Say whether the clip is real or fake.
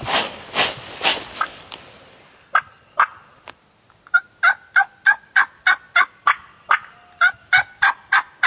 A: real